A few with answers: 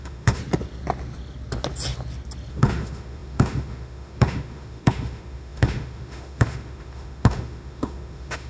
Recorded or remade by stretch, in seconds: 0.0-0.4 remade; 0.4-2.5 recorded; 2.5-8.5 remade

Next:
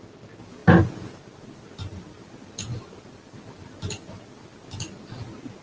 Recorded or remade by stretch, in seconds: 0.0-5.6 recorded

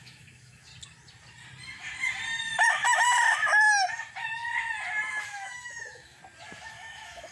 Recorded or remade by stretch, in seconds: 0.0-0.7 remade; 0.7-5.1 recorded; 5.1-6.2 remade; 6.2-6.7 recorded; 6.7-7.3 remade

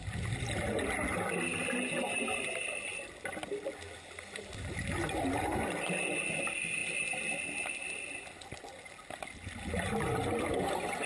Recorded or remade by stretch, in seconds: 0.0-11.1 recorded